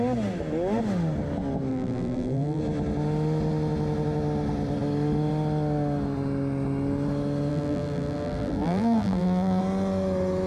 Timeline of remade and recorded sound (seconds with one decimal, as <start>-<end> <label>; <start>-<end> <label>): 0.0-1.7 recorded; 1.7-2.6 remade; 2.6-7.5 recorded; 7.5-9.6 remade; 9.6-10.5 recorded